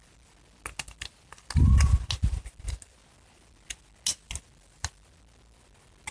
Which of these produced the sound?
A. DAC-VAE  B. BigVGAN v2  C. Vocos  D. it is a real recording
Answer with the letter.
D